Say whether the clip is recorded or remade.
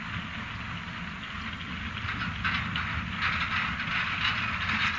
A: recorded